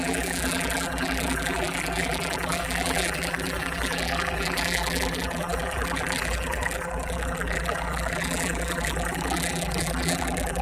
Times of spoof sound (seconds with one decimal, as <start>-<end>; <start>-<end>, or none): 0.0-10.6